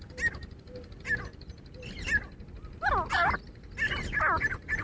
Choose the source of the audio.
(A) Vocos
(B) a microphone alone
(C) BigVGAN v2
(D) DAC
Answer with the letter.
B